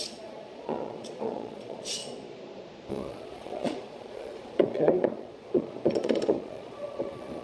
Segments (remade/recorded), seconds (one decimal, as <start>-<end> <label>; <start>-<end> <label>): 0.0-2.0 remade; 2.0-2.9 recorded; 2.9-7.4 remade